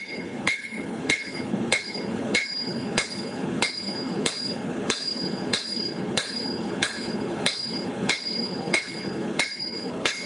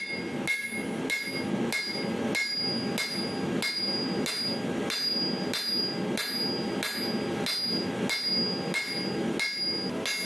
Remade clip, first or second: first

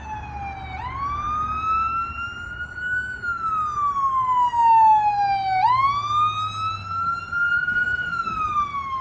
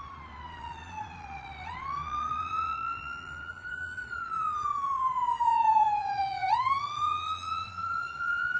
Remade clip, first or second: second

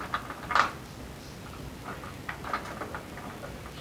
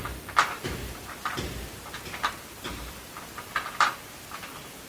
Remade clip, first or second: second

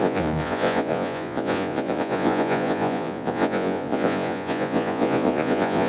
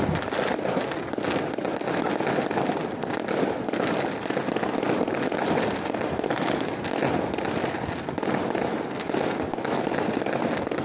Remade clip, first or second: first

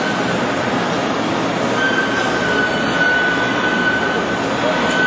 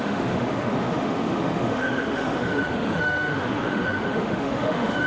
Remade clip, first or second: second